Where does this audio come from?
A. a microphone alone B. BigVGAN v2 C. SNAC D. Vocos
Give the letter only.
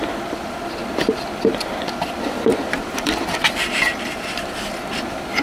B